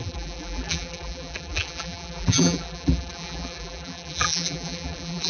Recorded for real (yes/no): no